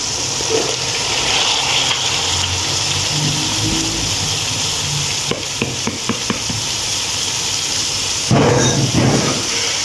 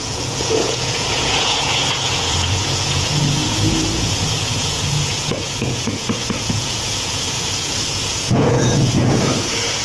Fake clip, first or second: second